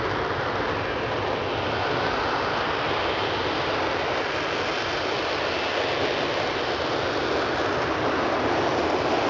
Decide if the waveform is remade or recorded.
recorded